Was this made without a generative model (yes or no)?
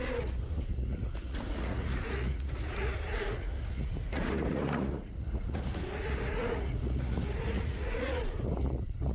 no